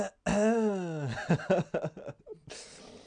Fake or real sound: real